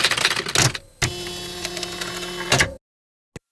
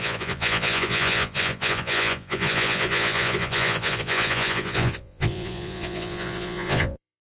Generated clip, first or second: second